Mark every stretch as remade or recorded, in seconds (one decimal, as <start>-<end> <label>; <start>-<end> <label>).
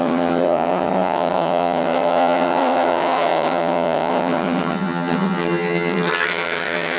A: 0.0-7.0 remade